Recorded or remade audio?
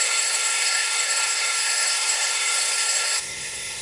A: remade